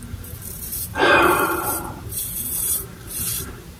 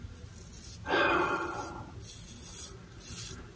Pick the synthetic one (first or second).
first